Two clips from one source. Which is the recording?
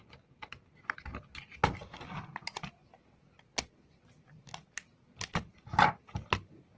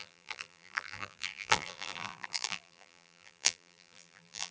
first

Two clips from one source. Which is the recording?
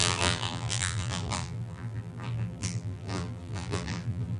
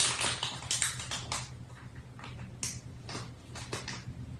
second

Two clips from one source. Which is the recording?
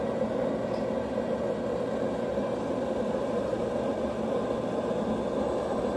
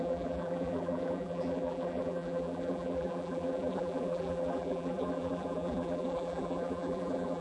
first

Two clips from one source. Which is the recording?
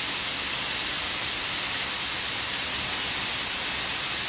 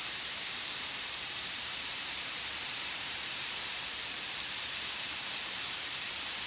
first